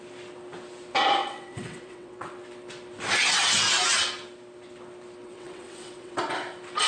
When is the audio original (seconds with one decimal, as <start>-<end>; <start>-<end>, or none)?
0.0-1.2; 2.3-5.2; 6.2-6.9